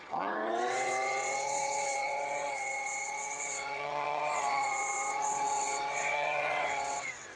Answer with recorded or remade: remade